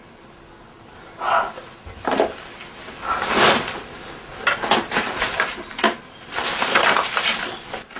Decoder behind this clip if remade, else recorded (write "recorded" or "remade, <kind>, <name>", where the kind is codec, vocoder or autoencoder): recorded